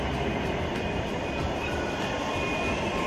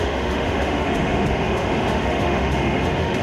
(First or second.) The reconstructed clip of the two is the second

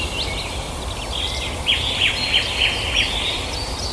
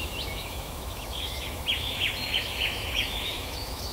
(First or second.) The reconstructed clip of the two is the second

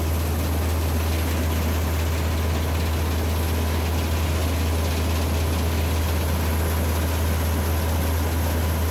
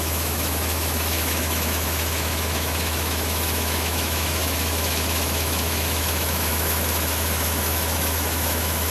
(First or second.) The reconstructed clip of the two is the second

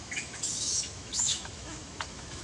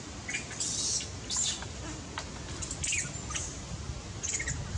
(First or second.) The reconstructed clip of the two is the first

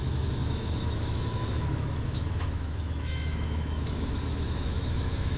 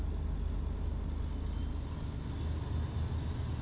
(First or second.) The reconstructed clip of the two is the first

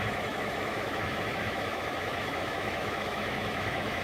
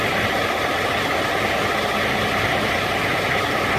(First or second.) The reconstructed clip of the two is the first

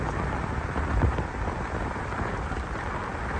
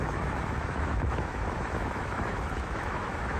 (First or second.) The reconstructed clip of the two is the second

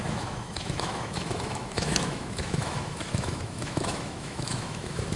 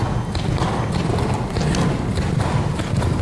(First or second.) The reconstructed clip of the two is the first